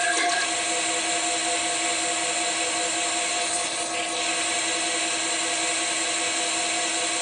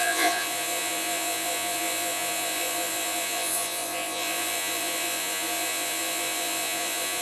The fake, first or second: second